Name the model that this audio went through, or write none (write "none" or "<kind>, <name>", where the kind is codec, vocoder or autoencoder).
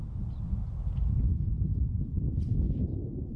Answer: none